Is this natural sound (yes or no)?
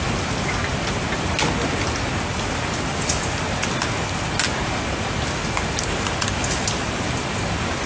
yes